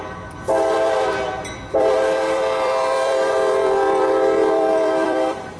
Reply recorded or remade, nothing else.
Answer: remade